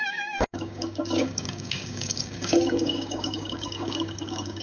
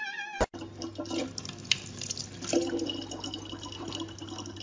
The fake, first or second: first